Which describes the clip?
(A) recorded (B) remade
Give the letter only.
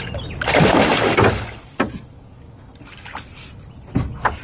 A